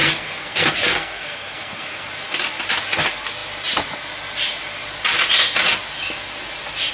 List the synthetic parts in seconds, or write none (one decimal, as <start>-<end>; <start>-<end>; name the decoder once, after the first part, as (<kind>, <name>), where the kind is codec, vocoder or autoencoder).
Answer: 0.0-2.1 (codec, SNAC)